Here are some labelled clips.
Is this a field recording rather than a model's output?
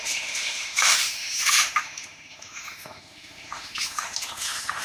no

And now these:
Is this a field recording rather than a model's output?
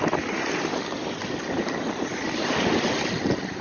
yes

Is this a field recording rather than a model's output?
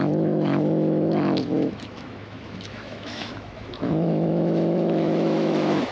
no